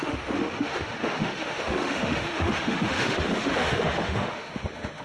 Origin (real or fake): fake